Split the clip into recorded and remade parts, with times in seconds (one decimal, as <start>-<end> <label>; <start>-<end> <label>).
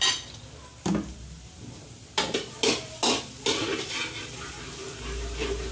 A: 0.0-5.7 recorded